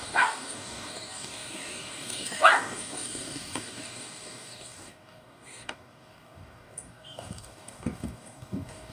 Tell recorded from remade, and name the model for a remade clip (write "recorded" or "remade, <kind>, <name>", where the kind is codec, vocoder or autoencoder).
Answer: remade, codec, DAC